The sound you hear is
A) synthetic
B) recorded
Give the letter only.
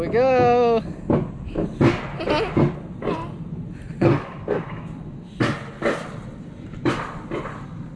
B